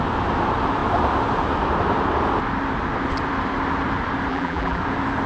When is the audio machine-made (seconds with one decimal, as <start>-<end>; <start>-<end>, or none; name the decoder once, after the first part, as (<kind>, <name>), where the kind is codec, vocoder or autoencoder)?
4.3-4.8 (vocoder, BigVGAN v2)

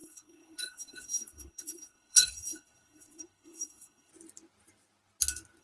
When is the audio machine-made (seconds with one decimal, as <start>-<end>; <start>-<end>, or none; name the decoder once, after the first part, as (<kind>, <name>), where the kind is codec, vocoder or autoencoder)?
0.0-4.1 (codec, SNAC)

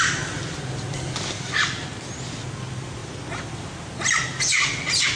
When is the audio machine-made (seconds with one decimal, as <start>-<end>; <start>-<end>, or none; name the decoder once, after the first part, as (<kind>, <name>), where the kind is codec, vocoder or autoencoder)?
none

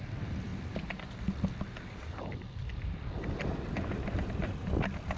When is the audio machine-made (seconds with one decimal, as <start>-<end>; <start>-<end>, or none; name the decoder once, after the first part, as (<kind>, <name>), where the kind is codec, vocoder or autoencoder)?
none

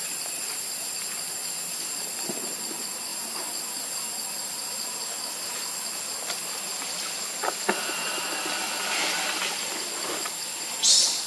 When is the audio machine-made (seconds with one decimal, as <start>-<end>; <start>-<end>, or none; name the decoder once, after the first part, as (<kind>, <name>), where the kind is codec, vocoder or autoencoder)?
none

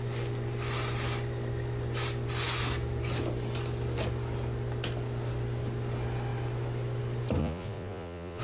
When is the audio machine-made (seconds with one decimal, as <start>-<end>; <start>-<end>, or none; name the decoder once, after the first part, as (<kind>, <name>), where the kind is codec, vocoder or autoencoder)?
7.4-8.4 (vocoder, Vocos)